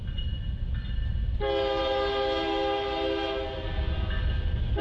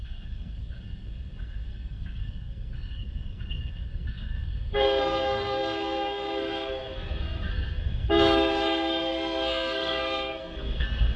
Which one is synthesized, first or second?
second